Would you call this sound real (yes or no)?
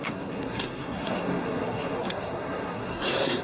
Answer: no